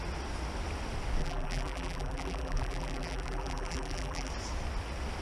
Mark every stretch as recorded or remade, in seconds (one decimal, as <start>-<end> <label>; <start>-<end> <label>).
0.0-1.2 recorded; 1.2-4.3 remade; 4.3-5.2 recorded